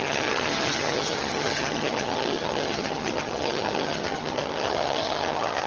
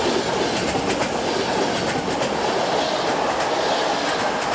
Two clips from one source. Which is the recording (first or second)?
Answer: second